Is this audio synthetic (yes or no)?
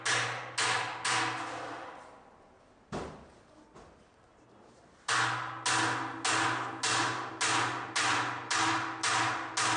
no